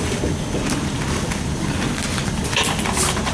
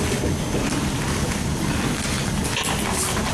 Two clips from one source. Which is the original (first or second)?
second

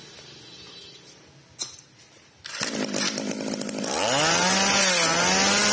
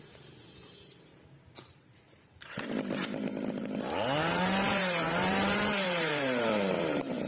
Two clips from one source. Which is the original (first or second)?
first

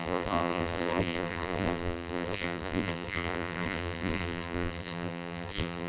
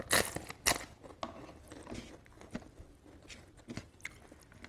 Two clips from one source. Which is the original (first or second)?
second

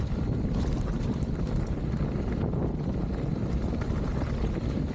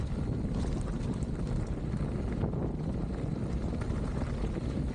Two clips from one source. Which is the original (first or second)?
second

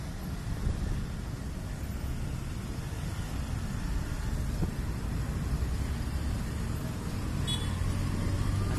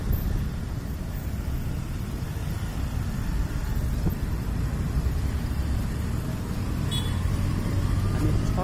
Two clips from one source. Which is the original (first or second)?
first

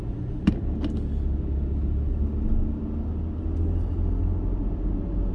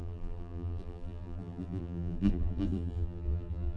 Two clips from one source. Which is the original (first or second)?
first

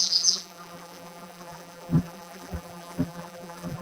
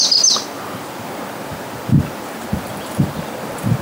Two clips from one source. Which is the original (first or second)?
second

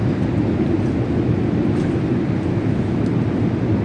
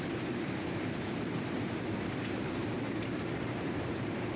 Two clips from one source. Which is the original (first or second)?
first